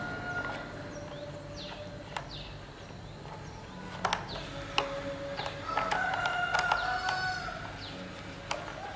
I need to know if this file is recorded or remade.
recorded